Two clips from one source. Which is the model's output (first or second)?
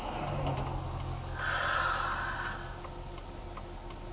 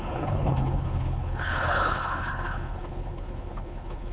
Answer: second